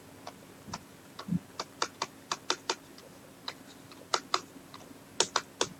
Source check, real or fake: real